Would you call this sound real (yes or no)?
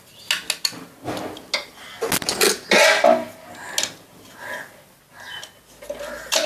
yes